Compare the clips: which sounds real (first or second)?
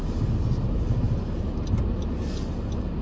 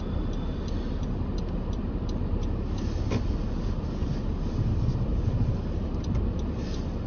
first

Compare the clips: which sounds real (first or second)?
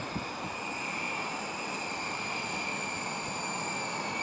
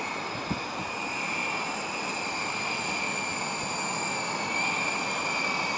second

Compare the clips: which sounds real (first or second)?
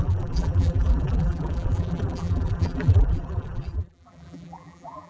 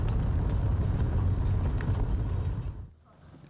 second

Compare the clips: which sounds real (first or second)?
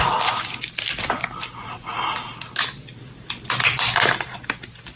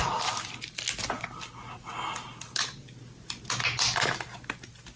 second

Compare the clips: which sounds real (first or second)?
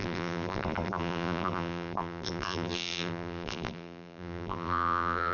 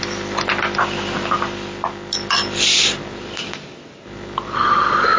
second